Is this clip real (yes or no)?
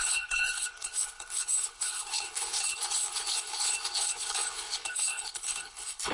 no